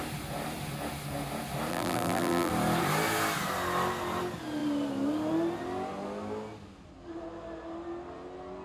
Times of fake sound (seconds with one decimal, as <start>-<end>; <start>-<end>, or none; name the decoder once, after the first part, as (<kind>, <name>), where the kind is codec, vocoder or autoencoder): 1.7-2.5 (vocoder, BigVGAN v2)